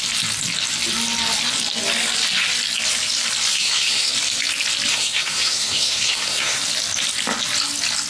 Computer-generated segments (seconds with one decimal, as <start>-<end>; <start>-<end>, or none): 3.5-4.1; 4.9-6.6